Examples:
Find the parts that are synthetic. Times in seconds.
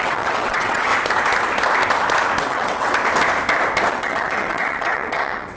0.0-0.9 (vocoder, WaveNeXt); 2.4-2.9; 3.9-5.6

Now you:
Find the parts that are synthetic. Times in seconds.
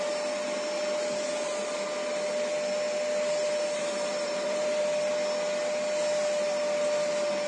3.8-4.8 (vocoder, BigVGAN v2)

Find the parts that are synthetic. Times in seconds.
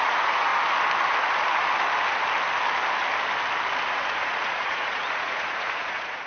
0.0-0.5 (vocoder, Vocos); 3.9-6.3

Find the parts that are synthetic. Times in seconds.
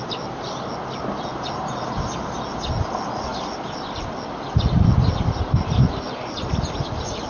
none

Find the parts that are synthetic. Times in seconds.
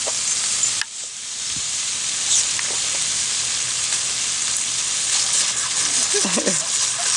1.1-1.9 (vocoder, BigVGAN v2)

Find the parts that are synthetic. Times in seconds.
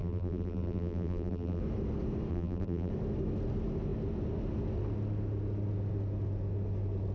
0.0-1.6 (vocoder, BigVGAN v2); 2.3-2.9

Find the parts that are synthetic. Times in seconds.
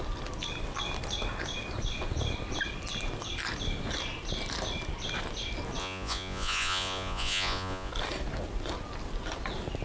5.8-7.9 (vocoder, Vocos)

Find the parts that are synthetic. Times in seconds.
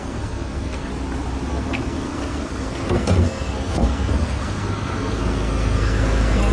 0.0-0.9 (codec, SNAC); 1.5-6.5